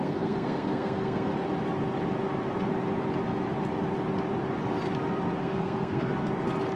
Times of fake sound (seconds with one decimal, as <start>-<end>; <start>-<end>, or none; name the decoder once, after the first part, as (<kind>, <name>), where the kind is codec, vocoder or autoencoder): 0.0-1.3 (codec, SNAC); 5.4-6.1